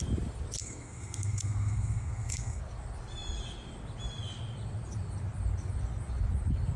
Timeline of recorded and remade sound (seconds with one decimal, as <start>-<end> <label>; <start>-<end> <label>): 0.0-0.6 recorded; 0.6-2.6 remade; 2.6-6.8 recorded